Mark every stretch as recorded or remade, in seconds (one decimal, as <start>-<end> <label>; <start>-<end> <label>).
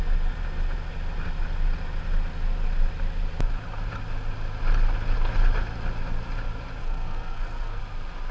0.0-6.8 recorded; 6.8-7.8 remade; 7.8-8.3 recorded